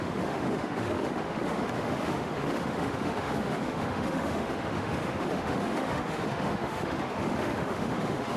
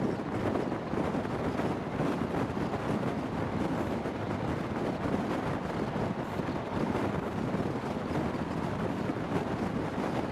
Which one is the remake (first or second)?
first